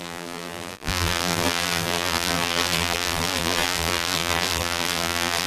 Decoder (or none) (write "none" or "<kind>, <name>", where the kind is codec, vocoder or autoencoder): vocoder, BigVGAN v2